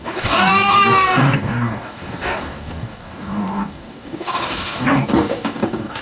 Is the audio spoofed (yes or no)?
yes